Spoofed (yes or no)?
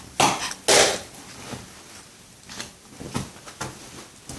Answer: no